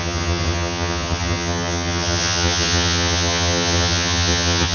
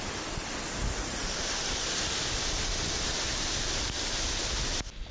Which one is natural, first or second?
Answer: second